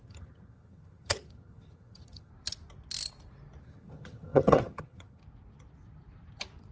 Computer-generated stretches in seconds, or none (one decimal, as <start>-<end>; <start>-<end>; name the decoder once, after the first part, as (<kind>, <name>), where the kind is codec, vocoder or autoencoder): 0.0-2.3 (vocoder, HiFi-GAN); 3.6-5.2